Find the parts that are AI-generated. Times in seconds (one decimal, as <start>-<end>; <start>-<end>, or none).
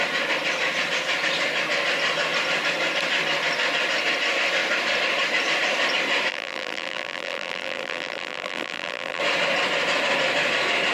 6.3-9.2